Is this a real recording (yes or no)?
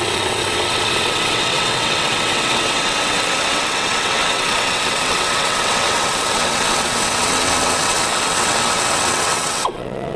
no